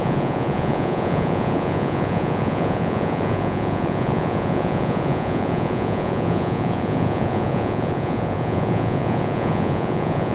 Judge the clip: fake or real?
fake